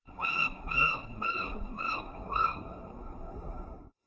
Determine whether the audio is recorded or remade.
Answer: remade